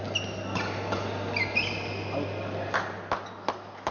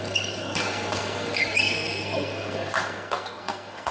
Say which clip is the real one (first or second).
first